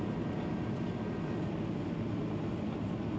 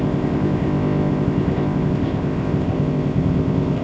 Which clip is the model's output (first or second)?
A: second